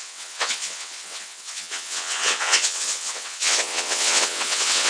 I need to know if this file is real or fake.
fake